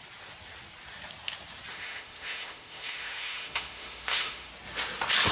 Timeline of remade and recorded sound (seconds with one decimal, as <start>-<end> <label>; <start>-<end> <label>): 0.0-1.7 recorded; 1.7-4.5 remade; 4.5-5.3 recorded